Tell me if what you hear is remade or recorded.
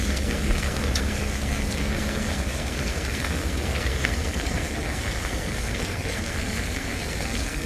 remade